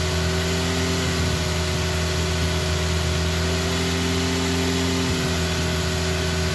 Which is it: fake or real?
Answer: real